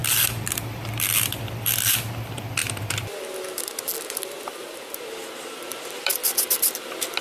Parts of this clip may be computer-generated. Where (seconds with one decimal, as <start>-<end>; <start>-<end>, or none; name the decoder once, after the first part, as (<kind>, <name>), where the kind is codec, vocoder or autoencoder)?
0.0-2.6 (vocoder, BigVGAN v2); 4.1-7.2